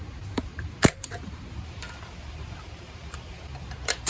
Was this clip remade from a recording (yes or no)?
yes